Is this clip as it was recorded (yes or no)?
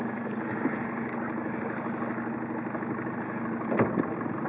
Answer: yes